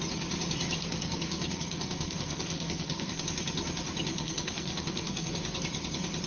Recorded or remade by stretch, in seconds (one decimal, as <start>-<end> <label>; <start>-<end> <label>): 0.0-0.8 recorded; 0.8-3.2 remade; 3.2-4.1 recorded; 4.1-5.3 remade; 5.3-6.3 recorded

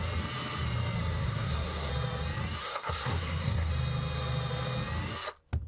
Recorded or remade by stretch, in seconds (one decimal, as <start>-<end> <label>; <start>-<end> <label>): 0.0-1.2 recorded; 1.2-1.9 remade; 1.9-2.6 recorded; 2.6-3.7 remade; 3.7-5.7 recorded

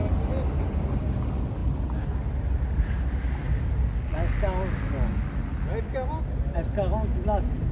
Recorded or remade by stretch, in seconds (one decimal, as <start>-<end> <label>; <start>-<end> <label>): 0.0-7.7 recorded